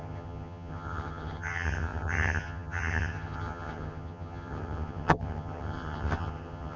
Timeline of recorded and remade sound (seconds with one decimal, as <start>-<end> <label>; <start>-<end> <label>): 0.0-6.8 remade